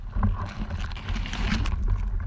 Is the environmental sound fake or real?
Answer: real